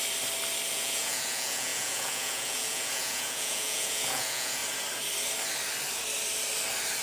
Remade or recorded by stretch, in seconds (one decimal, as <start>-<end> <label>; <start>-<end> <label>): 0.0-0.7 recorded; 0.7-4.6 remade; 4.6-7.0 recorded